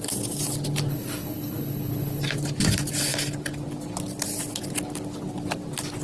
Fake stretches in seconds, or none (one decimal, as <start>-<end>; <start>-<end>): 0.9-2.2